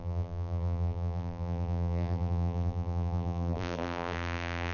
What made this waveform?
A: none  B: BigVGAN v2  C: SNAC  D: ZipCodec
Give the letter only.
B